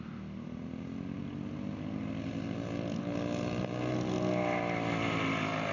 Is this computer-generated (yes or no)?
no